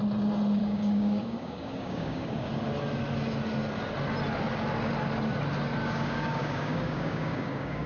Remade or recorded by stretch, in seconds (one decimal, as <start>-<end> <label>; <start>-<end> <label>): 0.0-0.6 recorded; 0.6-2.5 remade; 2.5-5.8 recorded; 5.8-7.9 remade